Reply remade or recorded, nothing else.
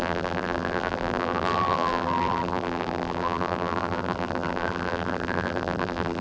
remade